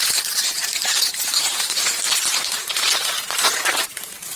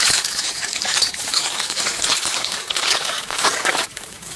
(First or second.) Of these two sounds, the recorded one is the first